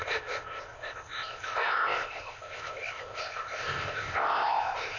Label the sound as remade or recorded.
remade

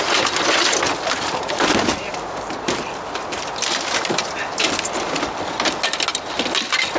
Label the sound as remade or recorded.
recorded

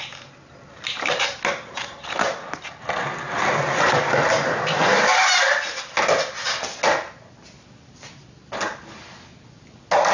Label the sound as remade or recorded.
recorded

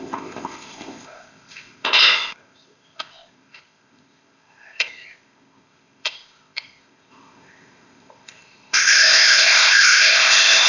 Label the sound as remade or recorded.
remade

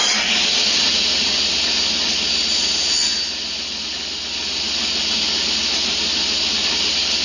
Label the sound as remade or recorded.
recorded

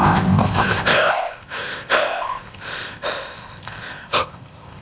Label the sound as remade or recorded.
remade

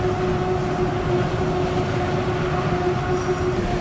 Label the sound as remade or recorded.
recorded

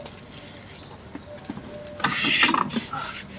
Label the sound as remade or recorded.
recorded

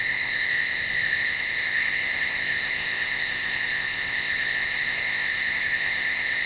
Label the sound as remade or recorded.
remade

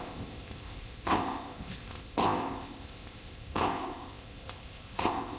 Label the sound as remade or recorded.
remade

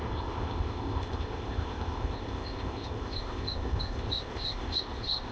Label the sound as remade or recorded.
remade